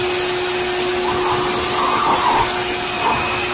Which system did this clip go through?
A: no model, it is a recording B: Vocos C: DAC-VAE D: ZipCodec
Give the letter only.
A